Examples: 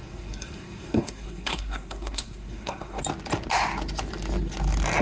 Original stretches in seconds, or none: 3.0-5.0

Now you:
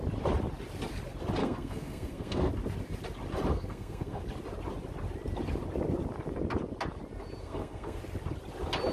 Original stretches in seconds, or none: 0.0-1.4; 2.5-3.5; 4.2-7.4; 8.0-8.9